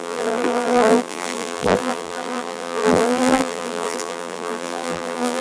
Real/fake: fake